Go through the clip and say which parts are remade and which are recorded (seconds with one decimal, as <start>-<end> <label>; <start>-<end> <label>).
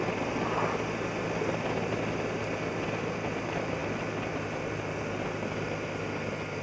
0.0-6.6 recorded